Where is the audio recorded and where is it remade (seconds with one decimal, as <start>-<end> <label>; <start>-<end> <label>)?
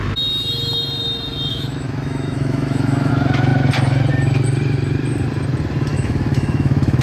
0.0-1.5 recorded; 1.5-3.1 remade; 3.1-5.9 recorded; 5.9-7.0 remade